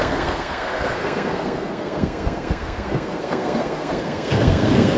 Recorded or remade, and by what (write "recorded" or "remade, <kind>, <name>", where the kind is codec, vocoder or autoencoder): remade, codec, SNAC